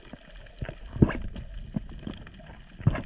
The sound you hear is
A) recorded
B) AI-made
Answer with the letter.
A